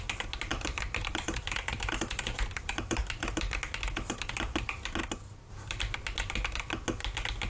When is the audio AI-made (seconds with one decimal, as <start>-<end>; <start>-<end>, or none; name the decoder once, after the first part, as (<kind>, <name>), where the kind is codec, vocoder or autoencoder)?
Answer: 0.5-3.0 (vocoder, BigVGAN v2)